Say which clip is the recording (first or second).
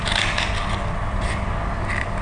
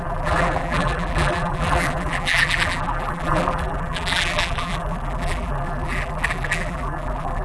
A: first